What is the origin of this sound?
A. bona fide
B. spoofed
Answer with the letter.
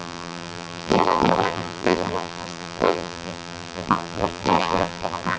B